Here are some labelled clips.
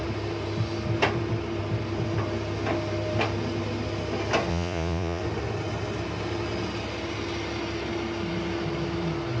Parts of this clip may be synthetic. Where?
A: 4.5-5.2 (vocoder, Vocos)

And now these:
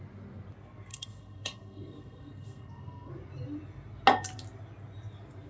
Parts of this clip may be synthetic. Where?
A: 0.9-3.1 (codec, SNAC)

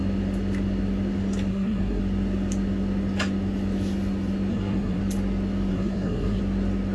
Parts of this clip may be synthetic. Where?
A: 1.5-2.0 (codec, SNAC); 4.5-5.0; 5.7-6.4